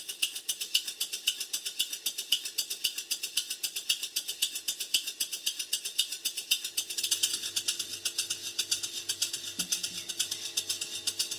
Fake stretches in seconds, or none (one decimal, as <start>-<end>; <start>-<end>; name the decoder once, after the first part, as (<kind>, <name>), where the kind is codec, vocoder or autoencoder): none